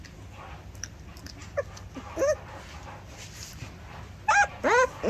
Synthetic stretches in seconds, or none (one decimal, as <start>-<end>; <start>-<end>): none

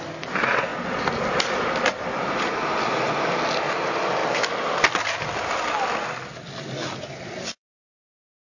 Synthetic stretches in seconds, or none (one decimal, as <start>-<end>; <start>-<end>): 4.2-8.6

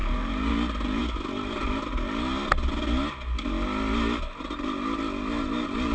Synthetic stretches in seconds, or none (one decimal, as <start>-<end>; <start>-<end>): 0.0-0.5

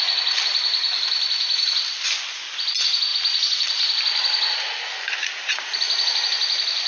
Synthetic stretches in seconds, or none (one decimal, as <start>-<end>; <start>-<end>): 0.5-1.1; 5.2-5.8

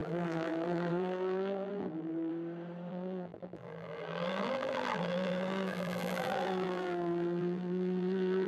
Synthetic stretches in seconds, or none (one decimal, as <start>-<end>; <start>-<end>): 0.0-2.3; 2.9-8.5